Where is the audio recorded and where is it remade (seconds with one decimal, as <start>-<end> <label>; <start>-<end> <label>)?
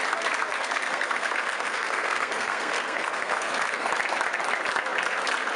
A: 0.0-0.5 recorded; 0.5-3.9 remade; 3.9-5.6 recorded